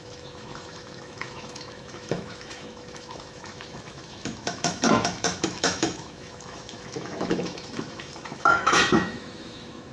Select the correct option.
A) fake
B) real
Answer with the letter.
A